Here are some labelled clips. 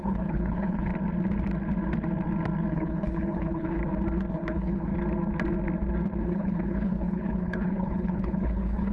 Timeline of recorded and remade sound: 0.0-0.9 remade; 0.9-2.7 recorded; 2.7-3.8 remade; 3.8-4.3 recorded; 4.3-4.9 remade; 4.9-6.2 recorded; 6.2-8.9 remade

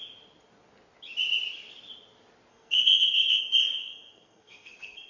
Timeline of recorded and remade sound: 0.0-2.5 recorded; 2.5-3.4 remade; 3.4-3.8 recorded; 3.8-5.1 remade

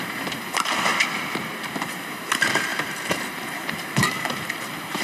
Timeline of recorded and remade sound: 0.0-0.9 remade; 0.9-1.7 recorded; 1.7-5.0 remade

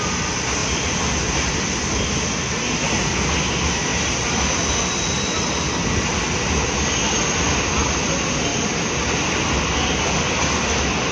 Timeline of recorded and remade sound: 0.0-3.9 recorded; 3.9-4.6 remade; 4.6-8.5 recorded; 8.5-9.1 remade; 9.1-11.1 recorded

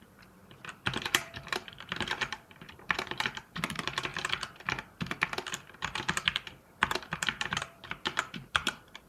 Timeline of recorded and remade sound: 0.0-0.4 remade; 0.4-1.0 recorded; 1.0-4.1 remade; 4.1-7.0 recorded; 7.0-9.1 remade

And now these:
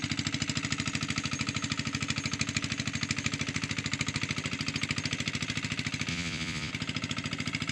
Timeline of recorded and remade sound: 0.0-6.1 recorded; 6.1-6.7 remade; 6.7-7.7 recorded